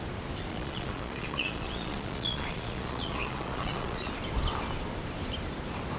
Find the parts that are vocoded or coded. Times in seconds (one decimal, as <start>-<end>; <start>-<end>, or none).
0.5-4.1